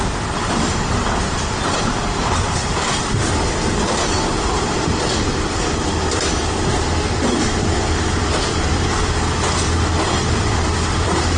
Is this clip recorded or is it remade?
remade